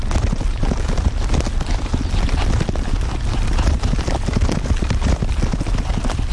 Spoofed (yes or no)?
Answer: no